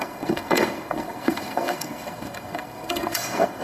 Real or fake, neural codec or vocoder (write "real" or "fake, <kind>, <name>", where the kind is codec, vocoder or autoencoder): fake, codec, SNAC